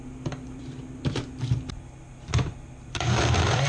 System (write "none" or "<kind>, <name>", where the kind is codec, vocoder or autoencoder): none